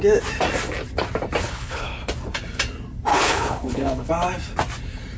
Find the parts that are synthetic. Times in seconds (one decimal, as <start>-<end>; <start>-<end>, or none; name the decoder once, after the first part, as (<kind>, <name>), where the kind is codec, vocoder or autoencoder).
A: 1.4-2.0 (codec, HILCodec); 3.1-4.1